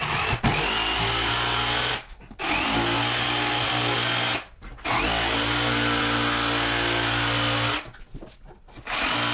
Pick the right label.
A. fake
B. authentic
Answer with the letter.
B